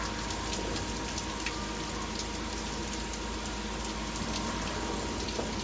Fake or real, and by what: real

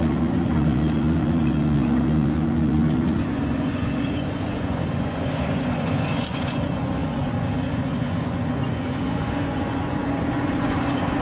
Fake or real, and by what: fake, vocoder, Vocos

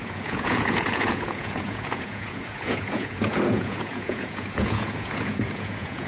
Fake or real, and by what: fake, vocoder, Vocos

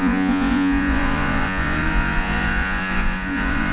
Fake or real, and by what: fake, vocoder, Vocos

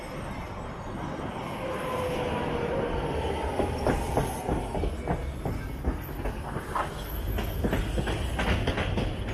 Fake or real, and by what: real